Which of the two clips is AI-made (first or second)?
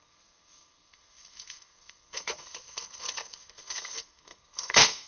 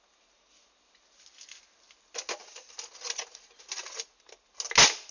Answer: first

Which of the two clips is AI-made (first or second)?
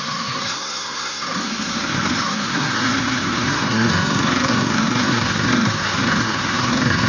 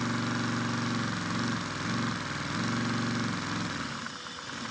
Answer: first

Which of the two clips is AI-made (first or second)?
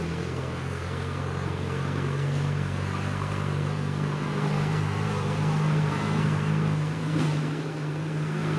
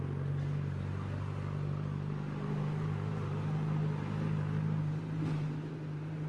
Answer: first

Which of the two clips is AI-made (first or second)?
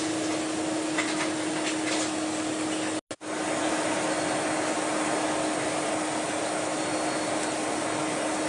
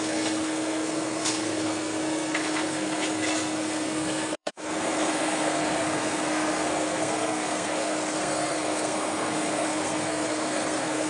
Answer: second